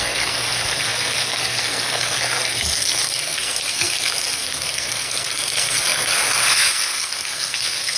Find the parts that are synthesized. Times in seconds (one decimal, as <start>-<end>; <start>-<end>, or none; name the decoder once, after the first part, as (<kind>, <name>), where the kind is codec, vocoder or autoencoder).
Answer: 0.0-8.0 (codec, SNAC)